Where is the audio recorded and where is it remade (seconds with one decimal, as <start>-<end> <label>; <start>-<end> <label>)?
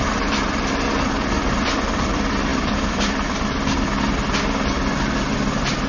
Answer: 0.0-5.9 recorded